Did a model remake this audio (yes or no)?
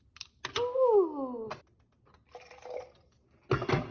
no